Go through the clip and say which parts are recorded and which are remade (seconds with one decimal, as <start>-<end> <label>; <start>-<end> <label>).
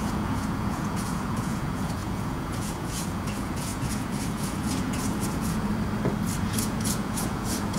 0.0-5.7 remade; 5.7-6.4 recorded; 6.4-7.8 remade